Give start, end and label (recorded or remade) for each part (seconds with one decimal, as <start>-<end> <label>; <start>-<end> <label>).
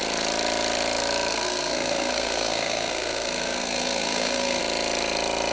0.0-1.3 recorded; 1.3-4.6 remade; 4.6-5.5 recorded